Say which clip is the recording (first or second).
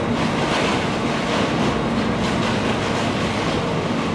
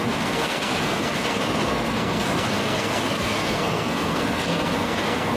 first